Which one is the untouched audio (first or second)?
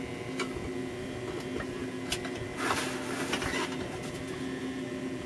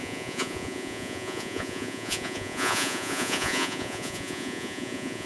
first